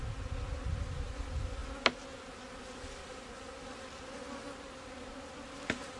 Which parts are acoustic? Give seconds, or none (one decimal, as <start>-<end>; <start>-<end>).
0.0-6.0